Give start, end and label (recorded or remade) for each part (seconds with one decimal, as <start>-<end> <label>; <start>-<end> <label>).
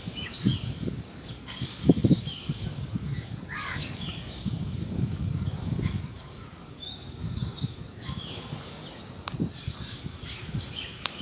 0.0-8.8 remade; 8.8-9.6 recorded; 9.6-11.2 remade